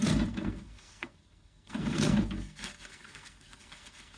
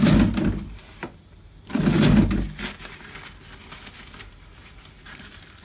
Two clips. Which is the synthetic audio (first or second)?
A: first